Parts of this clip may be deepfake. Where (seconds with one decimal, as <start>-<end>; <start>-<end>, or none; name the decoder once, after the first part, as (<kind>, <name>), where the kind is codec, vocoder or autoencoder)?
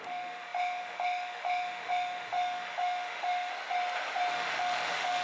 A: 0.0-3.5 (autoencoder, DAC-VAE); 4.3-5.2